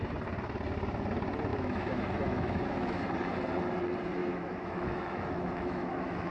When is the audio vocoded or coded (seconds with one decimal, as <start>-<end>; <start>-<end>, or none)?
1.5-3.0; 4.2-6.3